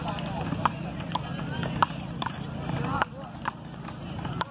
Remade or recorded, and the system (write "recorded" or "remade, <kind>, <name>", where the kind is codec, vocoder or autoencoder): recorded